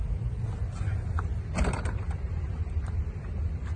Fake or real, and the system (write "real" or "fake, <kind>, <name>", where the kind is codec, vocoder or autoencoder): real